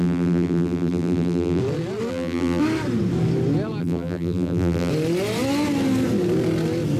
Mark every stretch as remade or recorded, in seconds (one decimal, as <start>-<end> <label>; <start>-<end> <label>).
0.0-1.6 remade; 1.6-2.1 recorded; 2.1-2.6 remade; 2.6-3.8 recorded; 3.8-4.9 remade; 4.9-7.0 recorded